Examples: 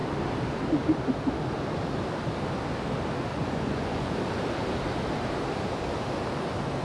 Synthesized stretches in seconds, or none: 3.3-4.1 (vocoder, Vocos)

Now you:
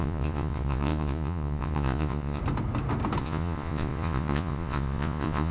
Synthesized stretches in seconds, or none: 0.0-2.4 (vocoder, Vocos); 3.2-5.5

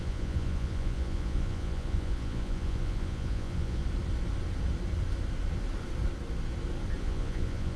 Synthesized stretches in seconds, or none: 0.0-3.8 (vocoder, Vocos); 7.0-7.8

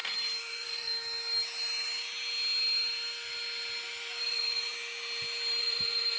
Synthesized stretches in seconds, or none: 0.5-0.9 (vocoder, Vocos); 4.2-4.7; 5.6-6.2

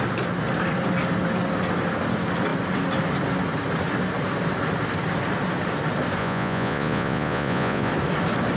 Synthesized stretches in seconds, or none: 6.2-7.9 (vocoder, Vocos)